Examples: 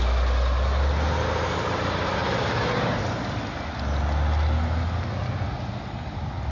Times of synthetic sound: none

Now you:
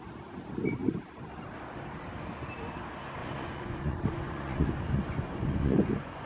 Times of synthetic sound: 3.2-6.3 (vocoder, Vocos)

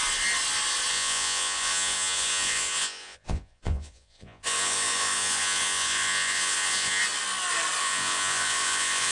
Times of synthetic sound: 0.9-7.0 (vocoder, Vocos); 7.8-9.1

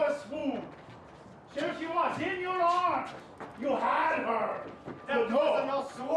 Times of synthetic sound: 3.5-4.3 (vocoder, BigVGAN v2)

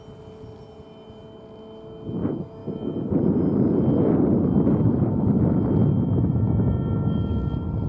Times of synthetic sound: none

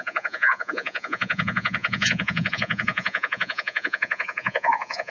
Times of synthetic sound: 0.0-5.1 (vocoder, Vocos)

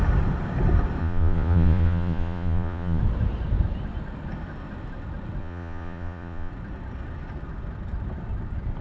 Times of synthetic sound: 1.0-3.0 (vocoder, Vocos); 5.4-6.5

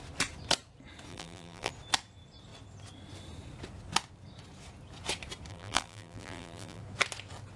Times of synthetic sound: 1.1-1.7 (vocoder, BigVGAN v2); 5.5-6.8